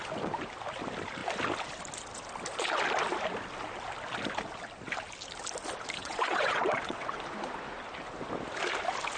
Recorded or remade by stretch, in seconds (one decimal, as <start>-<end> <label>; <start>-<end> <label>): 0.0-6.0 recorded; 6.0-7.2 remade; 7.2-9.2 recorded

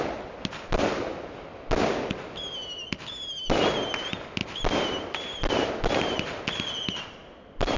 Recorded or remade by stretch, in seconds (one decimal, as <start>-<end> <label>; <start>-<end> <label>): 0.0-7.8 recorded

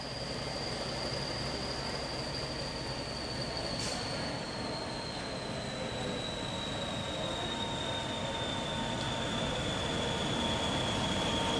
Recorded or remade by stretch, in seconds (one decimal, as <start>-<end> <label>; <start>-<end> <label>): 0.0-11.6 recorded

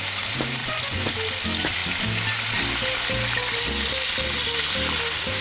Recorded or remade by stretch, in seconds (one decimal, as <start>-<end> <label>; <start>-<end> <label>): 0.0-0.6 recorded; 0.6-1.1 remade; 1.1-5.4 recorded

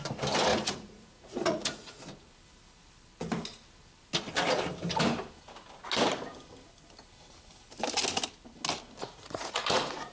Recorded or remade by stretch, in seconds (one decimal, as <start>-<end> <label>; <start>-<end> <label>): 0.0-0.5 recorded; 0.5-2.0 remade; 2.0-9.0 recorded; 9.0-10.1 remade

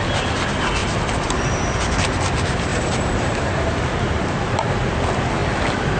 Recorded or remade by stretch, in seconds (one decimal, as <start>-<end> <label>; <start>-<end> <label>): 0.0-0.8 recorded; 0.8-2.1 remade; 2.1-2.7 recorded; 2.7-3.5 remade; 3.5-6.0 recorded